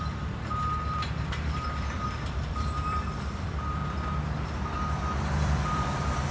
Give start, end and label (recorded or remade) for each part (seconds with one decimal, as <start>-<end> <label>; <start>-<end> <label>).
0.0-0.7 remade; 0.7-1.3 recorded; 1.3-3.8 remade; 3.8-5.0 recorded; 5.0-6.3 remade

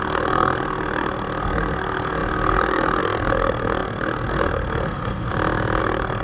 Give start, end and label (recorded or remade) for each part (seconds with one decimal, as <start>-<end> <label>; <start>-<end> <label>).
0.0-5.3 remade; 5.3-5.8 recorded; 5.8-6.2 remade

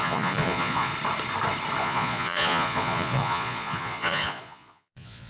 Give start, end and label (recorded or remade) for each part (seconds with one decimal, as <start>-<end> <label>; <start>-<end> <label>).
0.0-0.9 remade; 0.9-1.8 recorded; 1.8-5.3 remade

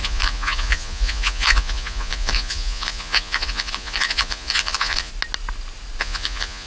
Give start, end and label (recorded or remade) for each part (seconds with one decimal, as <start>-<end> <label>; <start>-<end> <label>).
0.0-5.1 remade; 5.1-6.0 recorded; 6.0-6.7 remade

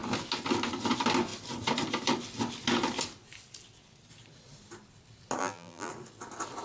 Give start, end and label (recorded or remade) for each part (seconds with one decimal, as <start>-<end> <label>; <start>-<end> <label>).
0.0-5.4 recorded; 5.4-5.9 remade; 5.9-6.6 recorded

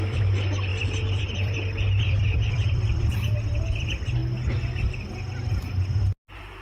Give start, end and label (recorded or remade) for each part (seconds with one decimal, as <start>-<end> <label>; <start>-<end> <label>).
0.0-0.7 recorded; 0.7-3.1 remade; 3.1-6.6 recorded